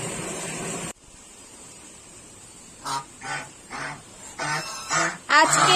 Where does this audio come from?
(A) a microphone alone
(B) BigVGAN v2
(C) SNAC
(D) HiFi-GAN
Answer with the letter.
B